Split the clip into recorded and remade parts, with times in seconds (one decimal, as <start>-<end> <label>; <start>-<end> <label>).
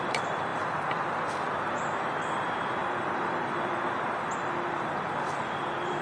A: 0.0-6.0 remade